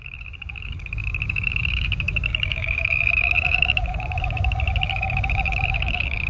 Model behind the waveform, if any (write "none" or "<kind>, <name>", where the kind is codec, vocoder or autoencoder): codec, DAC